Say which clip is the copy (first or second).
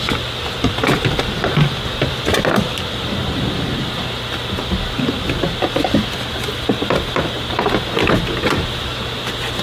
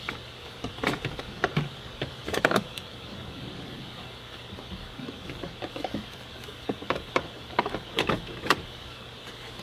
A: second